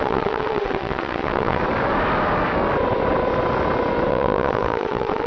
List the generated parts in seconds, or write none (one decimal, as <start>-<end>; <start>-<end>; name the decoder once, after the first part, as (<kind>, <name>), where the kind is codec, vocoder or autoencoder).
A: 0.0-1.6 (vocoder, WaveNeXt); 4.1-5.3